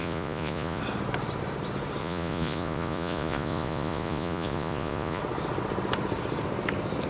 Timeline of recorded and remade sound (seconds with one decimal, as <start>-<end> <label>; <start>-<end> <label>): 0.0-0.8 remade; 0.8-2.0 recorded; 2.0-5.2 remade; 5.2-7.1 recorded